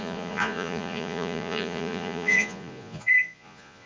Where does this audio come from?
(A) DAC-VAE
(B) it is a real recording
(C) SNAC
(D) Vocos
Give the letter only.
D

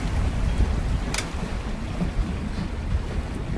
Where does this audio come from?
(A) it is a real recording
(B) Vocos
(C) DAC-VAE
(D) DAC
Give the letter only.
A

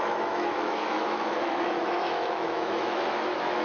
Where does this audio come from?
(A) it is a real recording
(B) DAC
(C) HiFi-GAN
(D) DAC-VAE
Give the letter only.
D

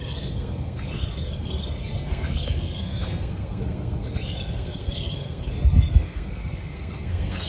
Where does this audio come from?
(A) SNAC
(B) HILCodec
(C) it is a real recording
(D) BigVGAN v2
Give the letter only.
A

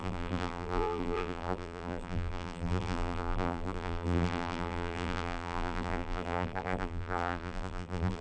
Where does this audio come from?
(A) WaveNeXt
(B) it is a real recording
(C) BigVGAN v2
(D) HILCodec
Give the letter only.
C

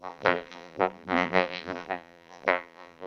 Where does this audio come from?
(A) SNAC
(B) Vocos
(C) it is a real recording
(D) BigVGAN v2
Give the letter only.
D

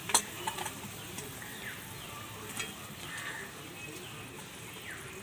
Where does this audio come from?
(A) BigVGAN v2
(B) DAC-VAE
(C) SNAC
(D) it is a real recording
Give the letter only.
D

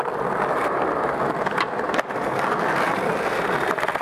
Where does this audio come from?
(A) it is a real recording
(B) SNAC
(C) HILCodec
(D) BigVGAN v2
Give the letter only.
A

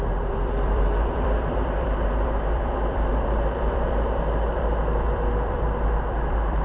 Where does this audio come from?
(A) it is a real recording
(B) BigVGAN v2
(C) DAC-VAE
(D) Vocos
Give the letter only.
B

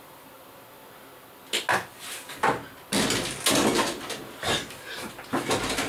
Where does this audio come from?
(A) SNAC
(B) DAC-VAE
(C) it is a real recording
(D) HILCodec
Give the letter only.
C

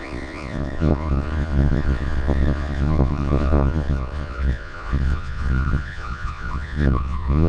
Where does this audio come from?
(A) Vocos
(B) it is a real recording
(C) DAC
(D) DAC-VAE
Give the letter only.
A